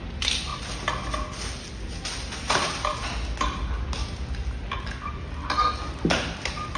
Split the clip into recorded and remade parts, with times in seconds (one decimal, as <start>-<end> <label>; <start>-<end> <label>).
0.0-6.8 recorded